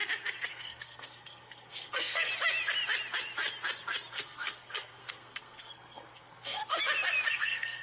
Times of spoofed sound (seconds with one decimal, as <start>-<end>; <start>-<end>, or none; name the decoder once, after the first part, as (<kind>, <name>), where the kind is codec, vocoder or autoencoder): 0.5-2.3 (codec, SNAC); 4.1-6.6; 7.3-7.8